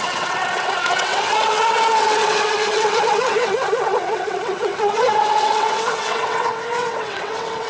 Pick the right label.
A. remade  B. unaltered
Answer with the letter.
A